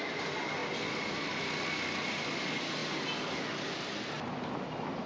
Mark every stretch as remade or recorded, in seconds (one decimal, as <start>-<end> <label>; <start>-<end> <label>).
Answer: 0.0-5.1 recorded